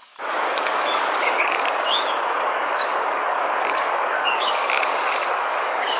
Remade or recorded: remade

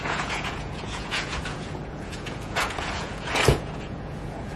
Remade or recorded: remade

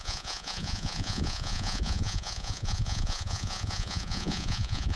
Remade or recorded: remade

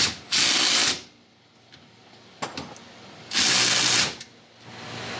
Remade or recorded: recorded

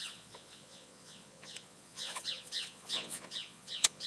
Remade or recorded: remade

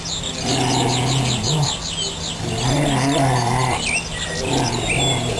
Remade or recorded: recorded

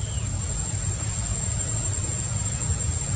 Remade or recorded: remade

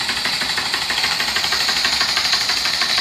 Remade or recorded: remade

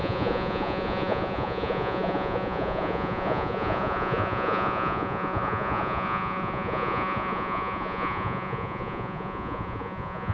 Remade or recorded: remade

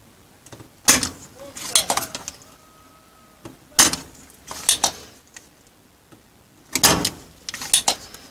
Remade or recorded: recorded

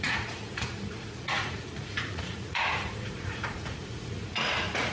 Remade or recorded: remade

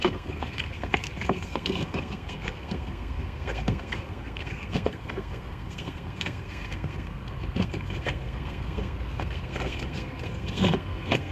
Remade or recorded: remade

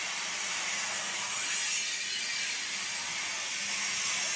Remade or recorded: recorded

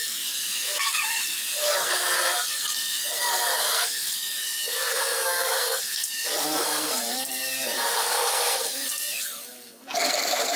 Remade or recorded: remade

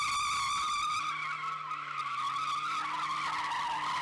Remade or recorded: recorded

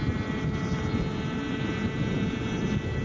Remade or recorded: recorded